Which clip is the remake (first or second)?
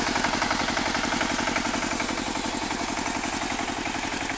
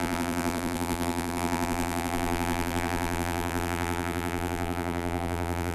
second